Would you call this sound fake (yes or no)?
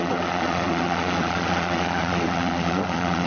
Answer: yes